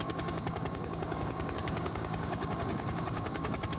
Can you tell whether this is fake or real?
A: fake